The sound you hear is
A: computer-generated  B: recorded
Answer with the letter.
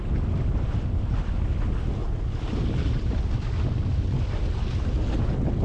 B